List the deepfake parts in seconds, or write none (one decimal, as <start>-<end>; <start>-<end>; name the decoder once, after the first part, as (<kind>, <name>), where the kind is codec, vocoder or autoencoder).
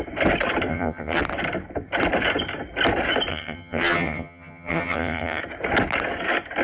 0.7-1.2 (vocoder, HiFi-GAN); 3.3-5.4